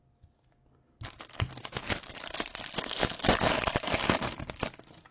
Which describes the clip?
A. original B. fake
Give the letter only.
A